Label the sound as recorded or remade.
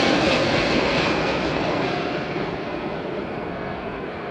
remade